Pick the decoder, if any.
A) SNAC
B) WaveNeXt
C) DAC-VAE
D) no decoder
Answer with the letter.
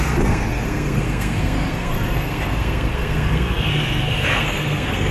A